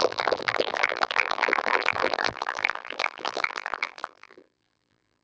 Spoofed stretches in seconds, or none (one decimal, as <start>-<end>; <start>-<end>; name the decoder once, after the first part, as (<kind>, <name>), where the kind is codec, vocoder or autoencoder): 0.0-5.2 (vocoder, BigVGAN v2)